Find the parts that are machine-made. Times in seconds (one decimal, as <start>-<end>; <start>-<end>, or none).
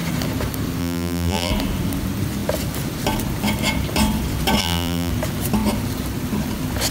0.8-1.5; 4.6-5.1